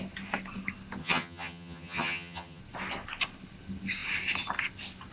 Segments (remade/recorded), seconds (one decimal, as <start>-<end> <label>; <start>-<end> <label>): 0.0-1.0 recorded; 1.0-2.6 remade; 2.6-5.1 recorded